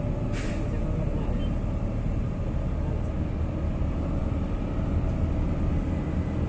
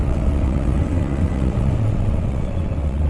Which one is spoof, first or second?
second